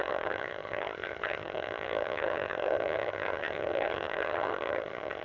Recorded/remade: remade